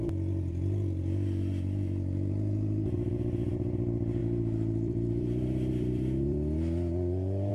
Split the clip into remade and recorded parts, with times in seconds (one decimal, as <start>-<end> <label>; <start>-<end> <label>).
0.0-4.2 recorded; 4.2-7.5 remade